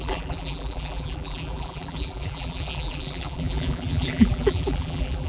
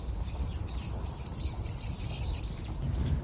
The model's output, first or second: first